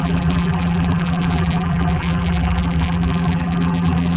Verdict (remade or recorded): remade